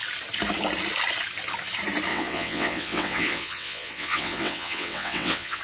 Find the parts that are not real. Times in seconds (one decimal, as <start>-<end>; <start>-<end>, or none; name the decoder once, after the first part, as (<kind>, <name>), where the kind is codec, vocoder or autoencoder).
2.1-5.6 (vocoder, WaveNeXt)